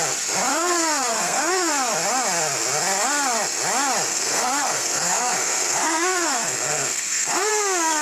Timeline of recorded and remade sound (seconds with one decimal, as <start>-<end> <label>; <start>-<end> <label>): 0.0-0.5 recorded; 0.5-1.7 remade; 1.7-4.1 recorded; 4.1-7.5 remade; 7.5-8.0 recorded